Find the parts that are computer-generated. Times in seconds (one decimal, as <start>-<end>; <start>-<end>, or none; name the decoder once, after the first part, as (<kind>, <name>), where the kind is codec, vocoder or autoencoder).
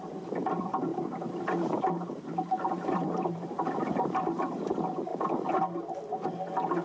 0.9-3.9 (vocoder, BigVGAN v2)